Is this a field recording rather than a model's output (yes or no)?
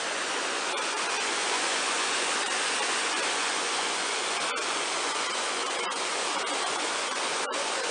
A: no